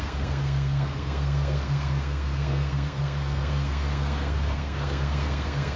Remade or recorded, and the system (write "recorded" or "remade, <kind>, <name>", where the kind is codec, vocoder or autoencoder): remade, codec, SNAC